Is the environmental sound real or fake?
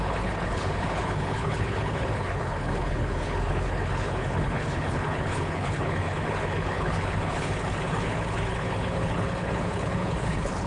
fake